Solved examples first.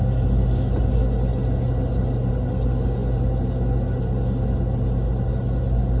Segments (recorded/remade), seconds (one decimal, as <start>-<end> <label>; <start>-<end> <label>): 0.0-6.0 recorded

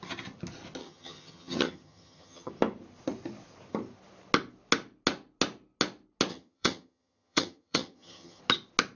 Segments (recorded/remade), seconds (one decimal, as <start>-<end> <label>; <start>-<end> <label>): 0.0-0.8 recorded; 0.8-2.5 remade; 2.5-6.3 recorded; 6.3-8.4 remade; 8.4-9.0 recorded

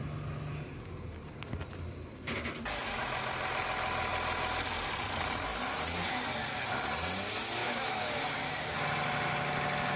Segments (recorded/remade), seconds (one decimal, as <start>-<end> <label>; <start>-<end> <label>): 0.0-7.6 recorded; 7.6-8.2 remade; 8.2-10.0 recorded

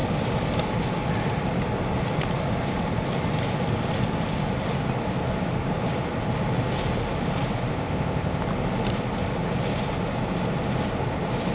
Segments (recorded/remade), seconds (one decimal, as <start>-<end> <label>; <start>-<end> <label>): 0.0-7.7 recorded; 7.7-8.4 remade; 8.4-11.5 recorded